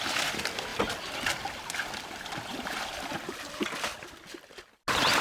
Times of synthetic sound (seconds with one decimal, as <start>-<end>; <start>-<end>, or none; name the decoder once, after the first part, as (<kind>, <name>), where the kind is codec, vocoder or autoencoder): none